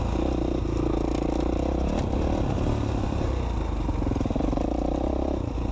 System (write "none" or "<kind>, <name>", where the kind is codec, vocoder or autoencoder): none